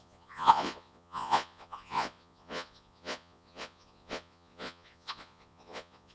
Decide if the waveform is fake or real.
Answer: fake